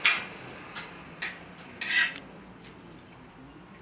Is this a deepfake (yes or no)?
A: no